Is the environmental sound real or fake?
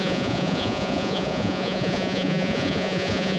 fake